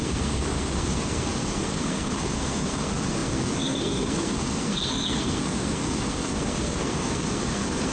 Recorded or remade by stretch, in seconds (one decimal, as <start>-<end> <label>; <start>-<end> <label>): 0.0-7.9 remade